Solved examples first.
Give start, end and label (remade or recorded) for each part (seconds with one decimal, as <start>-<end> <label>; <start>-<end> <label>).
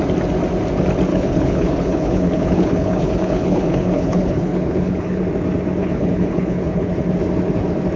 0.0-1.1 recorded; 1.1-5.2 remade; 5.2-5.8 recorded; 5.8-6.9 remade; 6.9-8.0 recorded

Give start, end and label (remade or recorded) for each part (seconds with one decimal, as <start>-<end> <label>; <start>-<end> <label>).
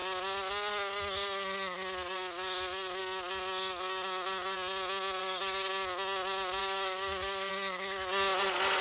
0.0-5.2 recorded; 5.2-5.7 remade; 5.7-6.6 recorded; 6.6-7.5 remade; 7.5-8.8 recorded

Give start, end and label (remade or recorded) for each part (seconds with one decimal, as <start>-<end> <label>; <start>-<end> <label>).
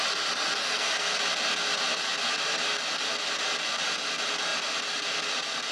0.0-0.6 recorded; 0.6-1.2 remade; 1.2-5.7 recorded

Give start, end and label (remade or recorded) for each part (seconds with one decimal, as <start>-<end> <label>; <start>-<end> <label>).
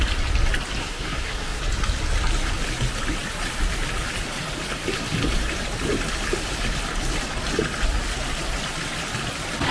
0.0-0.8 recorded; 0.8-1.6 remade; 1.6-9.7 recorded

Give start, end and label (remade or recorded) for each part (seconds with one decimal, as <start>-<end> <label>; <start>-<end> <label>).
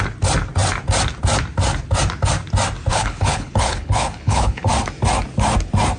0.0-2.9 recorded; 2.9-4.7 remade; 4.7-6.0 recorded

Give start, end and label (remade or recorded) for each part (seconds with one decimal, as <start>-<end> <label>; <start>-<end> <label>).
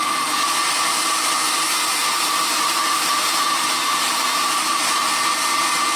0.0-2.0 recorded; 2.0-5.6 remade; 5.6-6.0 recorded